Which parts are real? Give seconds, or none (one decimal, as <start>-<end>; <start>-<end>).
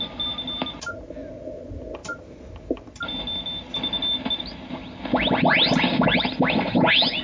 0.0-7.2